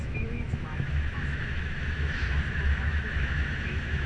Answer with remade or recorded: remade